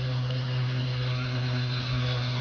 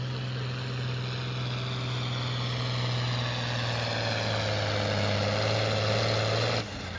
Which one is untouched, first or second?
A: second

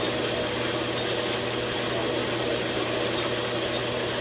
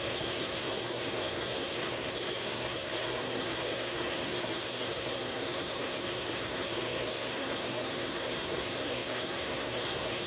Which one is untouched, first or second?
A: first